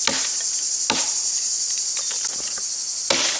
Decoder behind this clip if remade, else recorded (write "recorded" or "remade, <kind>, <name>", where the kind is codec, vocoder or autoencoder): recorded